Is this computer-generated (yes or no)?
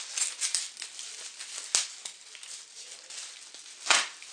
no